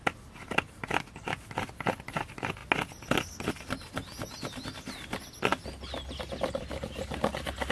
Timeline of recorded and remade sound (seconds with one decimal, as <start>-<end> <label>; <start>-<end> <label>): 0.0-7.7 recorded